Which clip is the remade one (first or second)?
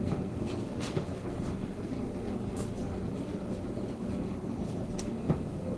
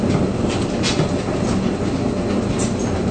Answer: first